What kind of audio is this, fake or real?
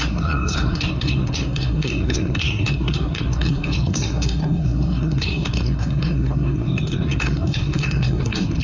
fake